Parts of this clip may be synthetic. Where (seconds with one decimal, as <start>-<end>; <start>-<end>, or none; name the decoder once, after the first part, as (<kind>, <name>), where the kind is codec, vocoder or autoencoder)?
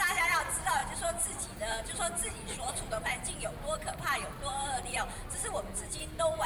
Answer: 0.0-0.8 (vocoder, BigVGAN v2); 1.8-2.3